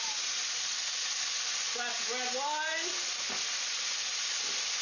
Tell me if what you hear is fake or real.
real